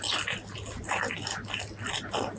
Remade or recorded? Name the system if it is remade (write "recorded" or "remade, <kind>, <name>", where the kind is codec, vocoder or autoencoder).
recorded